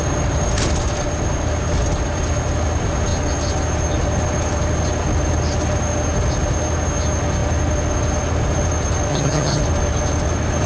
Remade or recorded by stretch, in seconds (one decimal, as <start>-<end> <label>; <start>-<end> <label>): 0.0-9.1 recorded; 9.1-9.6 remade; 9.6-10.7 recorded